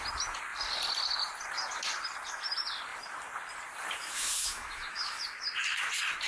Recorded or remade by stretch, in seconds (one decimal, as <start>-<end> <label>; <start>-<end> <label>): 0.0-4.0 recorded; 4.0-5.2 remade; 5.2-6.3 recorded